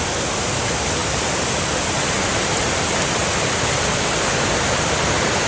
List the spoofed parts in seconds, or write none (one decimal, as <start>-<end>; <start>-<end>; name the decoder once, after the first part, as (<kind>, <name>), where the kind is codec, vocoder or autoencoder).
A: 0.0-3.2 (vocoder, BigVGAN v2); 4.3-5.5